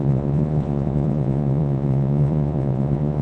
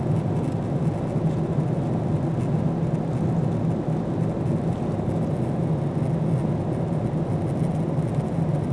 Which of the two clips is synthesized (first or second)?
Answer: first